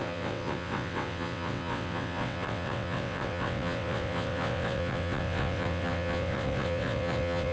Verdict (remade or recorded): remade